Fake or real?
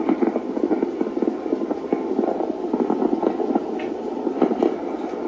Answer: fake